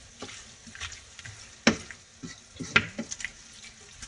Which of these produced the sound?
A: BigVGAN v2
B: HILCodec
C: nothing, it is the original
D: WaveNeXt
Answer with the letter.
C